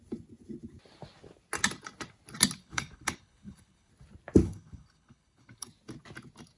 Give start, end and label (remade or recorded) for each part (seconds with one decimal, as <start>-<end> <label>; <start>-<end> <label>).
0.0-2.6 recorded; 2.6-3.9 remade; 3.9-4.4 recorded; 4.4-5.7 remade; 5.7-6.6 recorded